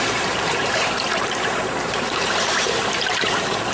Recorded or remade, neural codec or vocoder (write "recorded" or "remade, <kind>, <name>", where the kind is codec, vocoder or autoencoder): remade, vocoder, BigVGAN v2